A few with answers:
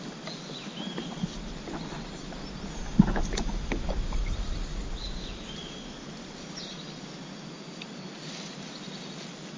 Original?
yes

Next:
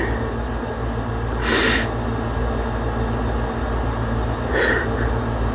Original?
yes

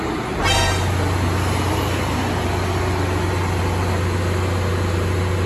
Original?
yes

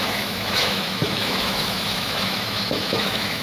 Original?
no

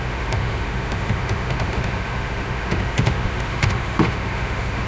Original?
no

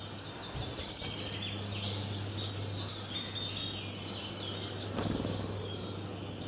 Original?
yes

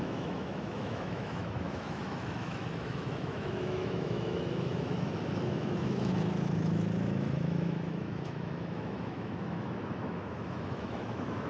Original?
no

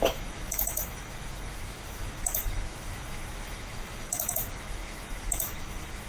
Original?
no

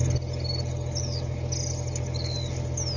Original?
yes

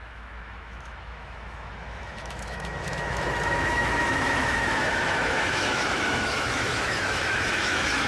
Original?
no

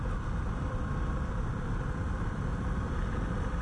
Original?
yes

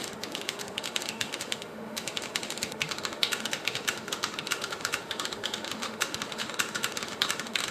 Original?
no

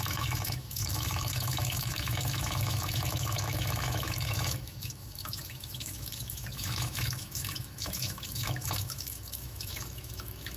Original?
no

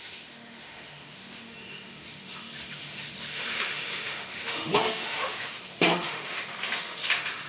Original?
no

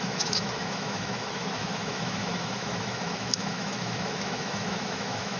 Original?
no